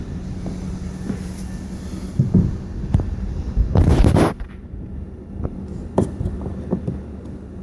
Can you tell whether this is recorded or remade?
remade